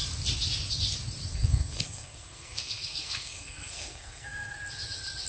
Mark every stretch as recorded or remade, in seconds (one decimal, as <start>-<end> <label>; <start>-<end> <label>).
0.0-1.3 recorded; 1.3-4.5 remade; 4.5-5.3 recorded